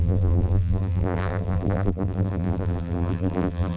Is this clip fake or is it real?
fake